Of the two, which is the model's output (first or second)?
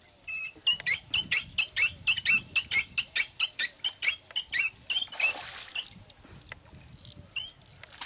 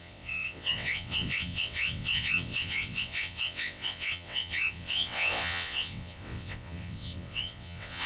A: second